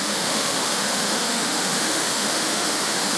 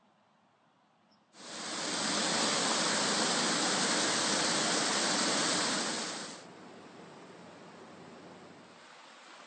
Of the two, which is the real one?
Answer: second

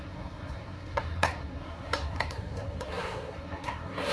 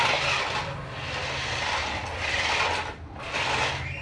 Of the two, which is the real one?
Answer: second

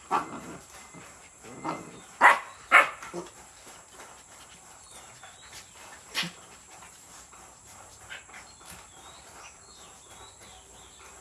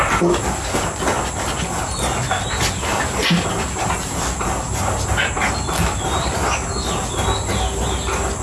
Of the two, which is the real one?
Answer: second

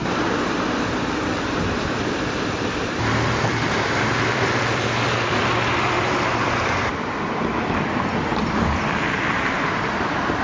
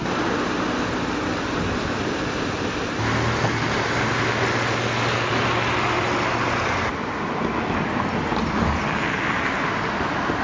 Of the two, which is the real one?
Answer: second